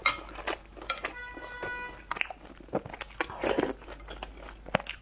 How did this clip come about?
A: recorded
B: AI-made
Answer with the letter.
A